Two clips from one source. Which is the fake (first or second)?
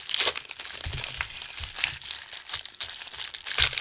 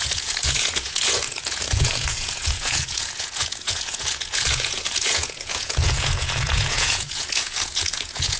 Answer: second